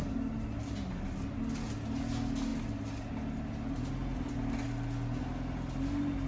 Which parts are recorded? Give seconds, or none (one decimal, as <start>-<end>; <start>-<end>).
0.0-6.3